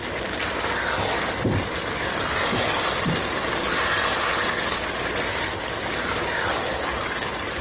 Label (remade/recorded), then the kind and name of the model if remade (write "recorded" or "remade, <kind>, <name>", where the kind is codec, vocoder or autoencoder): recorded